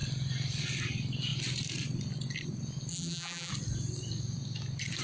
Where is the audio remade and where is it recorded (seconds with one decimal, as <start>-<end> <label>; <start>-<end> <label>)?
0.0-2.9 recorded; 2.9-3.5 remade; 3.5-5.0 recorded